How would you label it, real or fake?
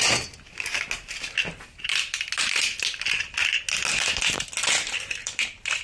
real